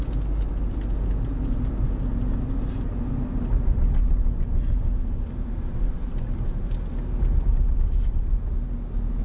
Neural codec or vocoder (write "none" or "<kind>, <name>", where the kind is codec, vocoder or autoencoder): none